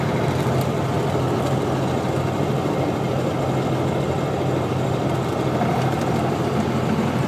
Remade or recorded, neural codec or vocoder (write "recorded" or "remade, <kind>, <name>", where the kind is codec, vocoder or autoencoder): recorded